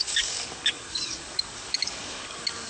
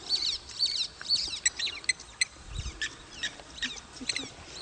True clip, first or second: second